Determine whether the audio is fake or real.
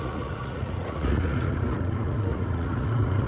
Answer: fake